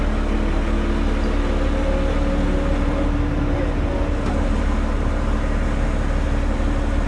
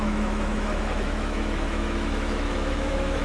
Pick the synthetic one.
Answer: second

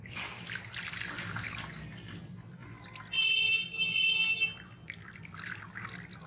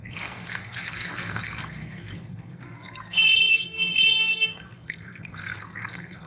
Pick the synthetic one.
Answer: second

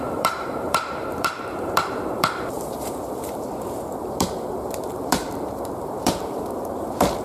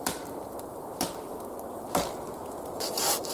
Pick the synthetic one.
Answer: first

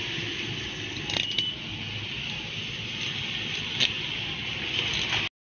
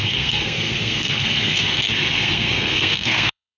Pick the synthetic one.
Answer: second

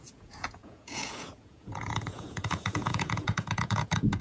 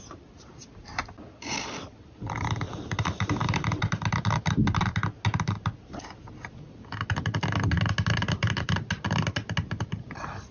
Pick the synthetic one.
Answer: first